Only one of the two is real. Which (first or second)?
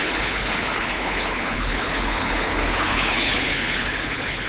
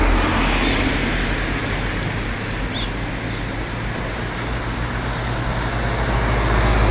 second